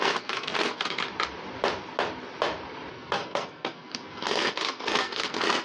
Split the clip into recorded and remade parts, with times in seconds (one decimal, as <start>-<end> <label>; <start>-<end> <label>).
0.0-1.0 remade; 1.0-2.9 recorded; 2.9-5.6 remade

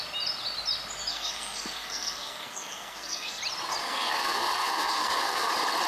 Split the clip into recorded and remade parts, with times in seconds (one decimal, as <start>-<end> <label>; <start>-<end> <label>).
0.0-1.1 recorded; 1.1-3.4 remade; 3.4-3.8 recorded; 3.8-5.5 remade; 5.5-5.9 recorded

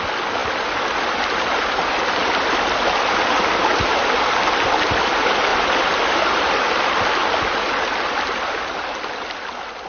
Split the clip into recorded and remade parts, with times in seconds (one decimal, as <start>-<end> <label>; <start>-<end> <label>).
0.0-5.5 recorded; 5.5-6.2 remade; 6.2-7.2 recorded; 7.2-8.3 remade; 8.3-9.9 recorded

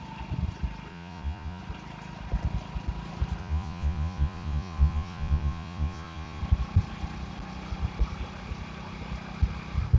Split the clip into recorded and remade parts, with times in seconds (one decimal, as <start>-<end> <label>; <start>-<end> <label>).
0.0-0.9 recorded; 0.9-1.6 remade; 1.6-3.4 recorded; 3.4-6.4 remade; 6.4-10.0 recorded

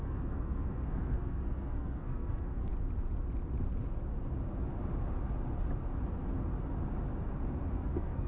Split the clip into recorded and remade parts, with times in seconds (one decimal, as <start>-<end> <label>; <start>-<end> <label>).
0.0-2.7 remade; 2.7-7.7 recorded; 7.7-8.3 remade

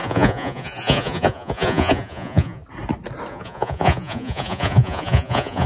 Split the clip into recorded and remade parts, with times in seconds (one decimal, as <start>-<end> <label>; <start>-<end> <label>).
0.0-2.6 remade; 2.6-3.3 recorded; 3.3-5.7 remade